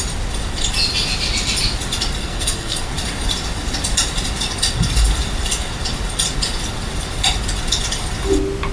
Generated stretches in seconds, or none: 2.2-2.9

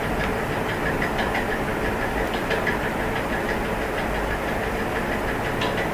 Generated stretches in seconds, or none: none